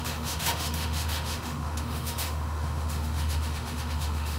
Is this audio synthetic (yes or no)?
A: yes